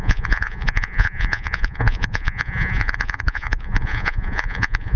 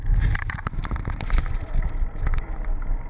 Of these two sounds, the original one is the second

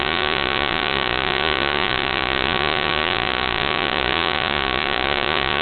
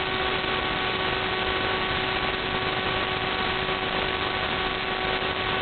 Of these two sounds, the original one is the second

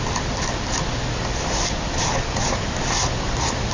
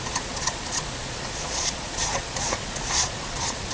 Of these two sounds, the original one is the first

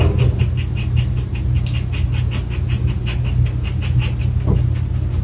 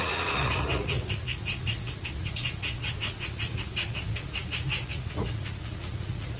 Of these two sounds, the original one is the first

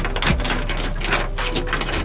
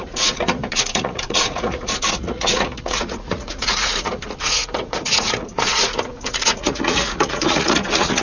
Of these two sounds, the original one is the first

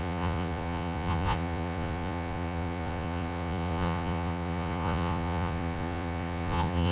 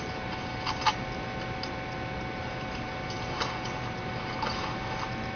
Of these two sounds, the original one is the second